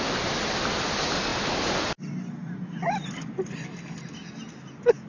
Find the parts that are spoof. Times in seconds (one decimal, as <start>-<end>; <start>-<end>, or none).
none